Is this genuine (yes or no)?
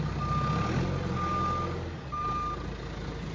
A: yes